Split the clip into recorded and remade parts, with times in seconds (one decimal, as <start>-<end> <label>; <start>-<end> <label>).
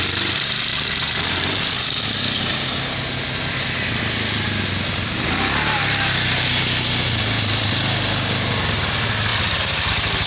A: 0.0-0.7 recorded; 0.7-1.8 remade; 1.8-9.3 recorded; 9.3-9.9 remade; 9.9-10.3 recorded